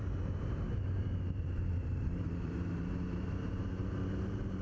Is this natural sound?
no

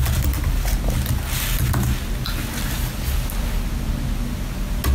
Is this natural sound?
yes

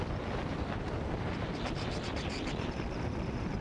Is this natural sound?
yes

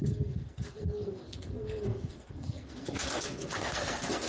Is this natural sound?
no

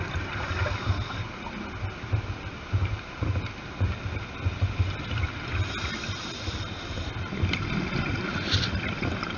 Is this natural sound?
yes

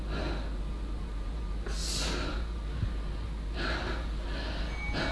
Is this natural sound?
yes